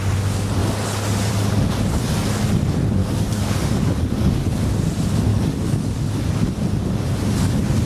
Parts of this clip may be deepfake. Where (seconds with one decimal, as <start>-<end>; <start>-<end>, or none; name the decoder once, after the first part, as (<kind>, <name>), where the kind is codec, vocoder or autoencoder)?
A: 3.0-4.6 (codec, DAC); 5.3-6.1